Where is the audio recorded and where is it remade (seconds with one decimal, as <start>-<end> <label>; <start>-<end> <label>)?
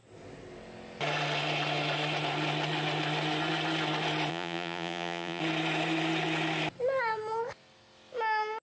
0.0-4.3 recorded; 4.3-5.4 remade; 5.4-8.6 recorded